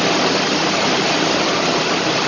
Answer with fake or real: real